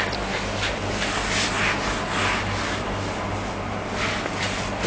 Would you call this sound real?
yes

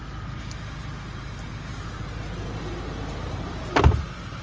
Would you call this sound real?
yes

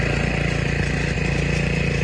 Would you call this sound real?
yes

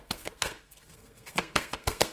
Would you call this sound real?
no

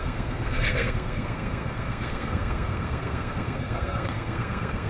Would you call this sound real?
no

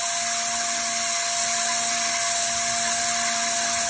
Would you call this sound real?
yes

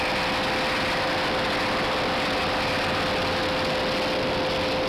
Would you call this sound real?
yes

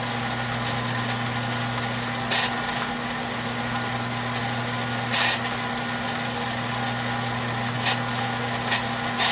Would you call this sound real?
yes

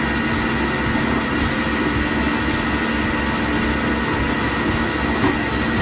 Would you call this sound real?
yes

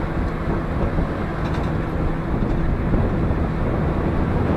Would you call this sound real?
yes